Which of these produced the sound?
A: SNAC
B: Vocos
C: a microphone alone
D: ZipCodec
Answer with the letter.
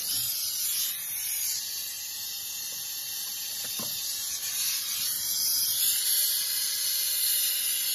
C